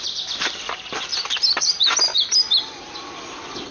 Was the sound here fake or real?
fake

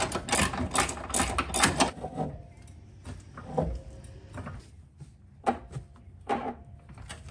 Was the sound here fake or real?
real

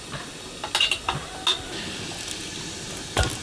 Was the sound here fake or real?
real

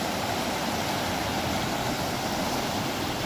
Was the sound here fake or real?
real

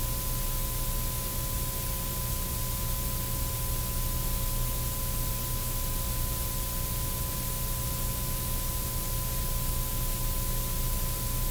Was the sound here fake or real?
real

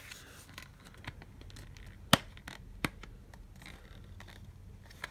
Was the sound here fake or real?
real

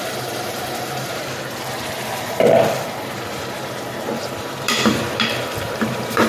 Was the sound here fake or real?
fake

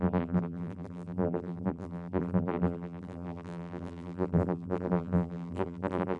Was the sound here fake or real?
fake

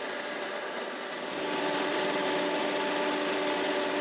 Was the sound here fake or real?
real